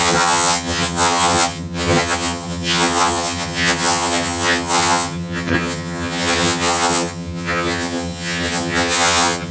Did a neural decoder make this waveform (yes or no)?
yes